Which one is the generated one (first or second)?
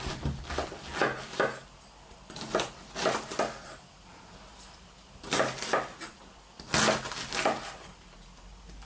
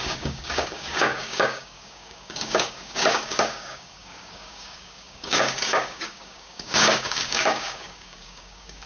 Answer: second